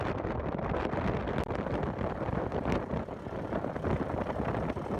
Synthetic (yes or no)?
no